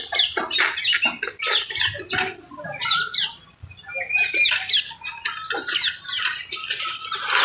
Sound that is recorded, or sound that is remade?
recorded